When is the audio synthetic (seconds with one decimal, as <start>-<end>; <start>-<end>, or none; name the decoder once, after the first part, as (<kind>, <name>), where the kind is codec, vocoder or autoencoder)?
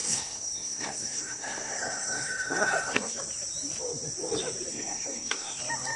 0.0-3.2 (codec, SNAC); 4.7-5.6